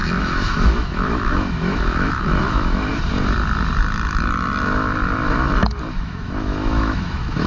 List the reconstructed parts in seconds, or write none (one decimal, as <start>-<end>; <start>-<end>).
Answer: 0.0-2.9; 5.9-7.5